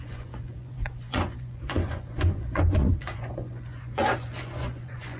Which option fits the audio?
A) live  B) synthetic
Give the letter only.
B